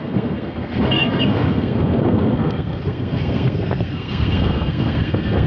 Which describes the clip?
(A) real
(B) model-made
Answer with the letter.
B